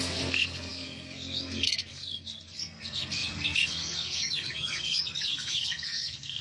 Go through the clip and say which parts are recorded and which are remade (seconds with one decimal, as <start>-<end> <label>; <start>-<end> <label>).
0.0-6.4 remade